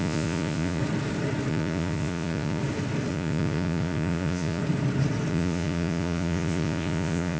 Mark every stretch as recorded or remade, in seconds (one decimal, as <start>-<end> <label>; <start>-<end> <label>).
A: 0.0-0.8 remade; 0.8-1.5 recorded; 1.5-2.6 remade; 2.6-3.1 recorded; 3.1-4.6 remade; 4.6-5.3 recorded; 5.3-7.4 remade